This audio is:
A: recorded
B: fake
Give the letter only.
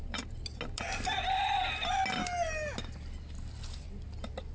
A